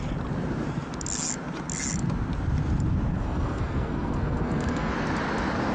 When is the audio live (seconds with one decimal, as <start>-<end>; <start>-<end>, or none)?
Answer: 0.0-3.1; 4.9-5.7